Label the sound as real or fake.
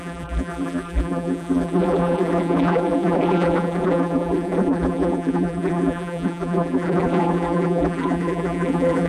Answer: fake